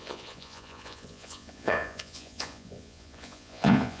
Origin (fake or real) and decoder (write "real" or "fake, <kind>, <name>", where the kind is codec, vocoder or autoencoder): fake, vocoder, Vocos